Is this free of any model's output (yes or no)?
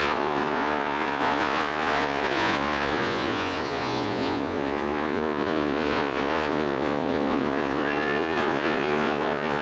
no